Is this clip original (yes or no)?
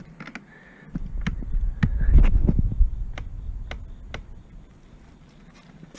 yes